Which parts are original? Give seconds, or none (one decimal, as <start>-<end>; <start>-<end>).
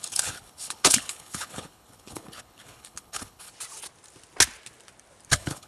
3.5-5.3